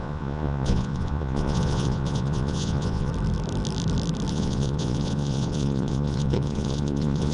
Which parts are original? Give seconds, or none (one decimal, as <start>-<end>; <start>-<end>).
3.1-4.3